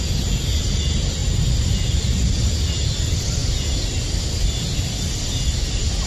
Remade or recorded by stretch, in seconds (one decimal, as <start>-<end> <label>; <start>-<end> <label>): 0.0-6.1 recorded